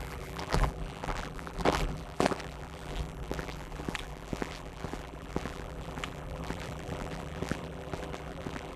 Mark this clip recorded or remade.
remade